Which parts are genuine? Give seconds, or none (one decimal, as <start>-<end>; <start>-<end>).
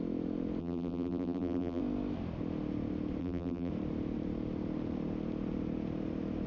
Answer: 0.0-0.6; 1.8-3.2; 3.7-6.5